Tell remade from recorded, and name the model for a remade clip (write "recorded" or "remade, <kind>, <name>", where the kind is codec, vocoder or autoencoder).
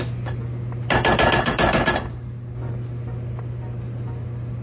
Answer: recorded